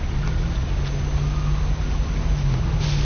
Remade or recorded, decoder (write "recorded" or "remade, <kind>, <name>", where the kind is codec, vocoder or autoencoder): recorded